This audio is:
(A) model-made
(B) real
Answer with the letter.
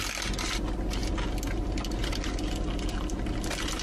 B